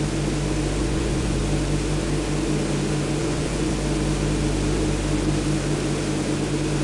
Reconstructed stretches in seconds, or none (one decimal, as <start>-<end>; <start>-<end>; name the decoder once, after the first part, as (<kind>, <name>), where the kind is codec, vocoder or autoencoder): 0.8-1.4 (vocoder, Vocos); 3.2-3.7